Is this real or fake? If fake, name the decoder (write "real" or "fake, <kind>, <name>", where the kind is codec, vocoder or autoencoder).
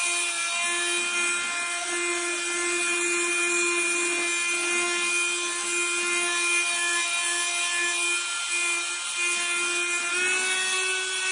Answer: real